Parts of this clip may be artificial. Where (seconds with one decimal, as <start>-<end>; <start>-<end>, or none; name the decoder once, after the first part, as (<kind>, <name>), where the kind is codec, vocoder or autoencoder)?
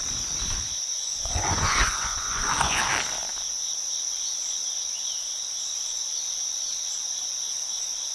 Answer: 0.9-2.8 (vocoder, Vocos)